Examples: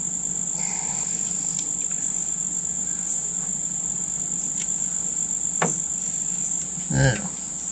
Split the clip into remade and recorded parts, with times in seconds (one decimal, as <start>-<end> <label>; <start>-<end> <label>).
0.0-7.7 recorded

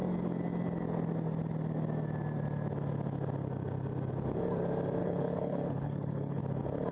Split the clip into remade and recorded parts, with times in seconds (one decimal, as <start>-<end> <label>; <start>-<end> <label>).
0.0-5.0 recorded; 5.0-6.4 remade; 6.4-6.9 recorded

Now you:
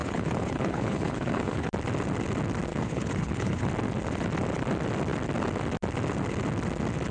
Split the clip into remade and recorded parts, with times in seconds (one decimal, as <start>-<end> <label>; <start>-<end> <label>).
0.0-1.7 remade; 1.7-2.7 recorded; 2.7-3.7 remade; 3.7-7.1 recorded

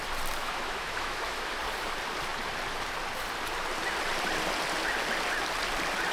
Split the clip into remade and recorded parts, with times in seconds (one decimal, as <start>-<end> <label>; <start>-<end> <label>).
0.0-0.4 recorded; 0.4-1.6 remade; 1.6-6.1 recorded